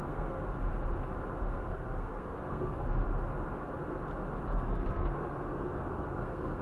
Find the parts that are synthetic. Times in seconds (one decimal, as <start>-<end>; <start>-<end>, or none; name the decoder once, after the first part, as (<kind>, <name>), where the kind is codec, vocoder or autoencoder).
0.0-0.4 (codec, SNAC); 1.4-2.9; 4.4-6.6